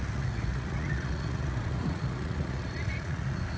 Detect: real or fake fake